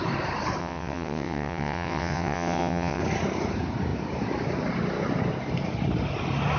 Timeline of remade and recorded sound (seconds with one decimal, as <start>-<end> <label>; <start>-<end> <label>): 0.0-0.6 recorded; 0.6-3.0 remade; 3.0-6.6 recorded